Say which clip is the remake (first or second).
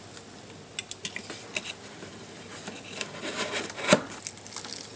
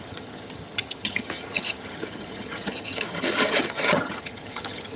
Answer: second